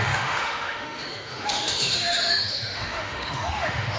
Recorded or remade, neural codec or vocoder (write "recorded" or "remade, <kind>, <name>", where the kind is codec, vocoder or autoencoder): remade, autoencoder, DAC-VAE